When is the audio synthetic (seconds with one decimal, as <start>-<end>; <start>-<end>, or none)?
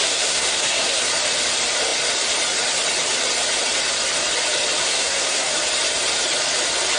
0.0-1.0; 4.8-5.5